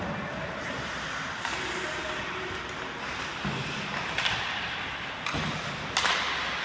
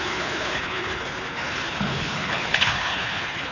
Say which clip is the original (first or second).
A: first